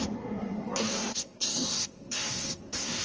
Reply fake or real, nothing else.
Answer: fake